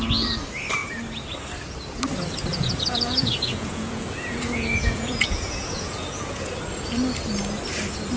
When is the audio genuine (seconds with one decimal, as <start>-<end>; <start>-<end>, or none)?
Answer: 0.0-2.5; 6.5-8.2